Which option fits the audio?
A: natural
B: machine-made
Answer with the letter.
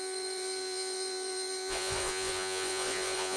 B